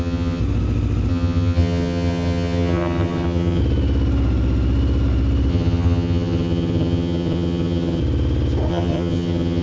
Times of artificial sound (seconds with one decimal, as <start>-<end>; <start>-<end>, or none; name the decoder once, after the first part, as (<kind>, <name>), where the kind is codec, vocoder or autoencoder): 0.0-0.4 (vocoder, HiFi-GAN); 1.1-3.6; 5.5-8.0; 8.7-9.6